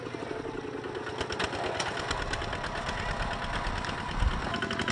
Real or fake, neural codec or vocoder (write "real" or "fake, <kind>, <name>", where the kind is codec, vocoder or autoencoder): real